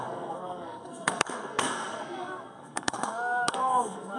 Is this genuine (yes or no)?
no